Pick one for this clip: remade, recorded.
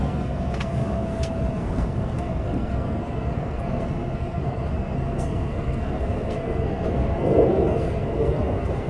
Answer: remade